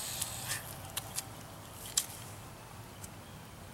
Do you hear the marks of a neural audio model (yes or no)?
no